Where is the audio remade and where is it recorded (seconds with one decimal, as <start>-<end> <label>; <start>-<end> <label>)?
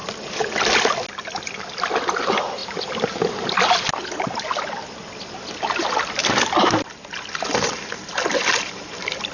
0.0-9.3 recorded